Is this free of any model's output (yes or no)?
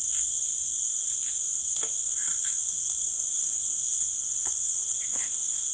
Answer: no